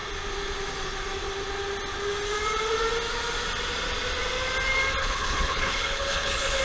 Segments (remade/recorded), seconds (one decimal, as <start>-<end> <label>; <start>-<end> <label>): 0.0-5.0 recorded; 5.0-6.6 remade